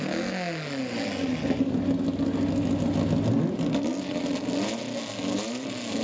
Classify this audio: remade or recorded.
recorded